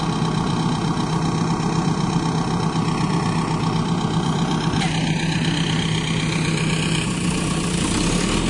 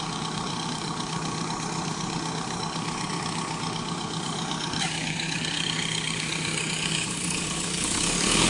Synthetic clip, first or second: second